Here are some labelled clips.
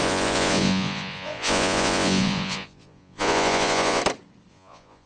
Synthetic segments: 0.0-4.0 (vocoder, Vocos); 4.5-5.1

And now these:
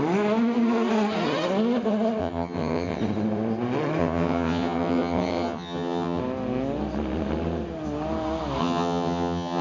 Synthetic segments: 2.2-3.0 (vocoder, HiFi-GAN); 4.0-6.2; 8.6-9.6